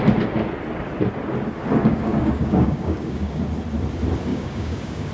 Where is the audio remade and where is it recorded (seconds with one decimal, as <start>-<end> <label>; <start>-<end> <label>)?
0.0-1.8 recorded; 1.8-3.4 remade; 3.4-4.3 recorded; 4.3-5.1 remade